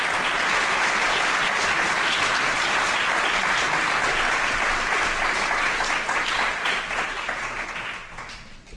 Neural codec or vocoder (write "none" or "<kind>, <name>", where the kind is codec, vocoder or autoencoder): none